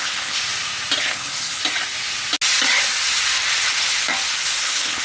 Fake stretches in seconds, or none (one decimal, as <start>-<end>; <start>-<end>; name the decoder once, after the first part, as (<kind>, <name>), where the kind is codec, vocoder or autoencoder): 0.0-0.4 (codec, HILCodec); 1.0-1.6; 4.6-5.0